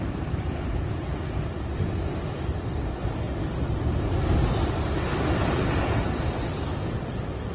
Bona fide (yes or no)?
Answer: yes